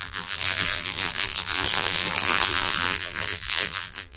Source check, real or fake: fake